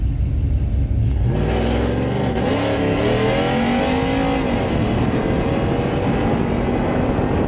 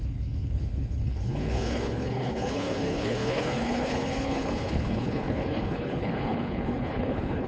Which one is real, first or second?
first